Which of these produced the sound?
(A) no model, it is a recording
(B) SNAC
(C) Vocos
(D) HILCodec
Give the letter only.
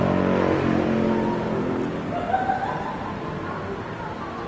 A